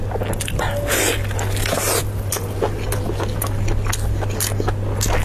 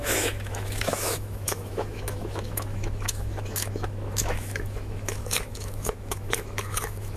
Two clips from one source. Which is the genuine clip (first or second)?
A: first